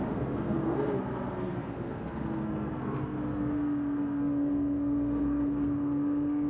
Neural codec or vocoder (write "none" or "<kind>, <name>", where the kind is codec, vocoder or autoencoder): codec, SNAC